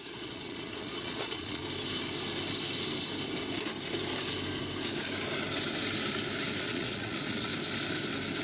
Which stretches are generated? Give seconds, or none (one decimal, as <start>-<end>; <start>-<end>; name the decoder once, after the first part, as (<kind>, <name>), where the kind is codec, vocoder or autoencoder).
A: 0.0-1.6 (vocoder, Vocos); 6.6-7.5